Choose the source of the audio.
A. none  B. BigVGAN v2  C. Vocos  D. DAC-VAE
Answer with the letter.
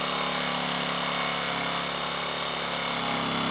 A